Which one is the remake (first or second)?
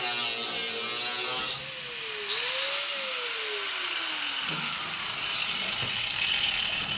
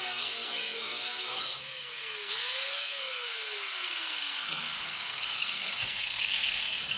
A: second